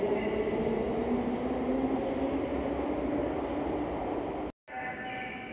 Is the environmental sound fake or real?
real